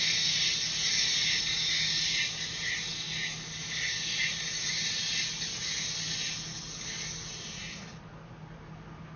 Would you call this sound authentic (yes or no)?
yes